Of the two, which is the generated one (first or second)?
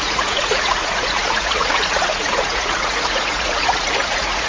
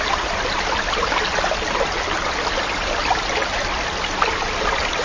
first